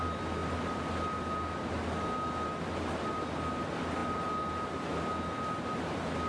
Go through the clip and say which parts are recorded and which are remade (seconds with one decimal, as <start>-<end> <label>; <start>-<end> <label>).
0.0-6.3 recorded